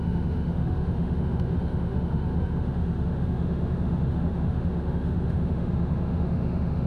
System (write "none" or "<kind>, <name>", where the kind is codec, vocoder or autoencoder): autoencoder, DAC-VAE